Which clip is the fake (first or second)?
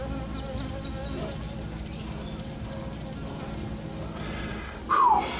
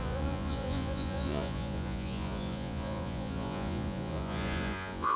second